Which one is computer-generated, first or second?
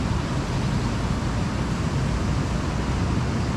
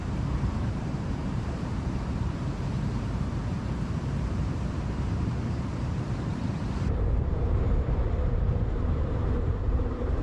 second